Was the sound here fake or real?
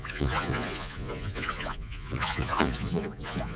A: fake